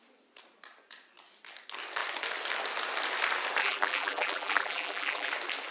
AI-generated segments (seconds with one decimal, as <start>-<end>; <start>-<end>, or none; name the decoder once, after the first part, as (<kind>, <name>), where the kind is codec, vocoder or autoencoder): 3.6-5.3 (vocoder, BigVGAN v2)